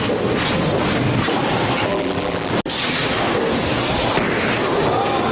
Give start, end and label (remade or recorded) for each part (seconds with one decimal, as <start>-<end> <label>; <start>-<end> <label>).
0.0-1.9 recorded; 1.9-2.5 remade; 2.5-5.3 recorded